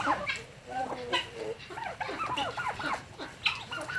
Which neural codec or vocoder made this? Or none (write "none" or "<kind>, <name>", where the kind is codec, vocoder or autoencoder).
none